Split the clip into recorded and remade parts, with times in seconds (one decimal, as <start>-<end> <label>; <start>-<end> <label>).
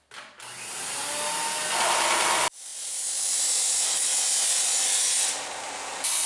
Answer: 0.0-6.3 recorded